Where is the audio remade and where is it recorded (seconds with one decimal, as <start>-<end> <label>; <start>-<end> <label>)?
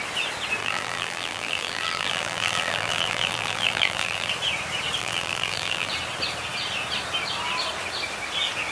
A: 0.0-0.6 recorded; 0.6-4.3 remade; 4.3-5.0 recorded; 5.0-5.9 remade; 5.9-8.7 recorded